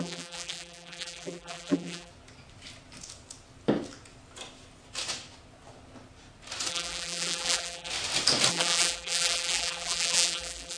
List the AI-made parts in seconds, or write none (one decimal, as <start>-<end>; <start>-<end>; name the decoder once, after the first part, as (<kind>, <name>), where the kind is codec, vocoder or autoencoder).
0.0-2.1 (vocoder, BigVGAN v2); 6.7-7.9; 8.5-10.8